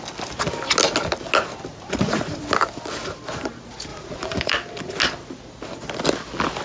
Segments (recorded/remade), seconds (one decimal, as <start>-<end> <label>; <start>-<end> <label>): 0.0-1.7 recorded; 1.7-2.4 remade; 2.4-3.9 recorded; 3.9-4.5 remade; 4.5-6.6 recorded